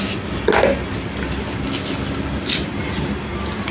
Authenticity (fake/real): real